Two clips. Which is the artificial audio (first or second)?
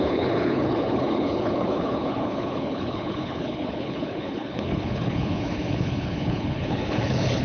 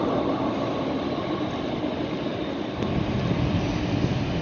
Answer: first